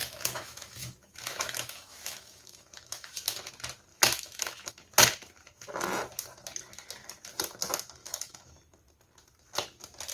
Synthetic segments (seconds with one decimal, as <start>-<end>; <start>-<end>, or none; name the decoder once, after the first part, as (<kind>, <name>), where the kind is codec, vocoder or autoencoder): 0.0-3.5 (autoencoder, DAC-VAE); 3.9-4.7; 8.0-8.5